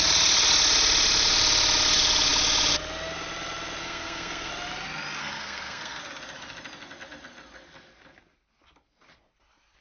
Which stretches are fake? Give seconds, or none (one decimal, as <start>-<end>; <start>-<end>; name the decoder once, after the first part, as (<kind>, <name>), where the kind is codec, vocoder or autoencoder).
3.8-4.5 (codec, SNAC); 5.2-6.0